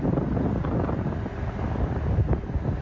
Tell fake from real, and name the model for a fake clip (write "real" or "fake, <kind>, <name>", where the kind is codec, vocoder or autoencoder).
real